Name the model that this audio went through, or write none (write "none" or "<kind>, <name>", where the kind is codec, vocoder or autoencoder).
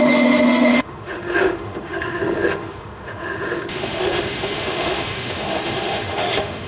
autoencoder, DAC-VAE